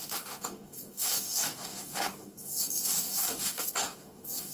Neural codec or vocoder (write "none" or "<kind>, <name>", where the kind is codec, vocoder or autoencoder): codec, DAC